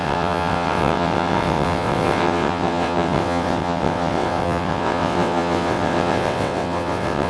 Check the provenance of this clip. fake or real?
fake